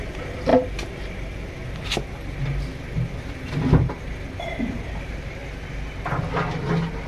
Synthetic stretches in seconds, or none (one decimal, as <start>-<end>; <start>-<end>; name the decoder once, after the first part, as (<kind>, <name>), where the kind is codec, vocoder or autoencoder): 0.0-0.5 (vocoder, BigVGAN v2); 3.9-5.4

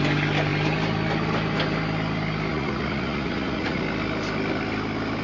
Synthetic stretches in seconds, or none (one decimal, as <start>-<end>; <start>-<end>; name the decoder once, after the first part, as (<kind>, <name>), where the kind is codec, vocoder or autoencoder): 2.5-3.8 (vocoder, Vocos)

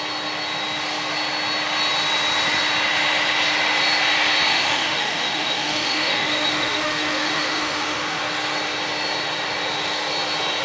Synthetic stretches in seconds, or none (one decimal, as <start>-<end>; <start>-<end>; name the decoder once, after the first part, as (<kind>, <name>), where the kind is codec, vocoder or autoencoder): 4.5-8.2 (autoencoder, DAC-VAE)

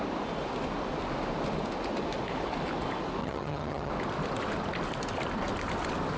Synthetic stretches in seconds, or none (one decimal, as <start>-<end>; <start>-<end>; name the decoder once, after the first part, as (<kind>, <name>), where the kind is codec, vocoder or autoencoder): 3.2-3.9 (vocoder, HiFi-GAN)

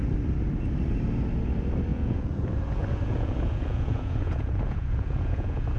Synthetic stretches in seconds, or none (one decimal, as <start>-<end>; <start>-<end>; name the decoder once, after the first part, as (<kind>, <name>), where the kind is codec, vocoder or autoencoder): 1.9-5.8 (vocoder, Vocos)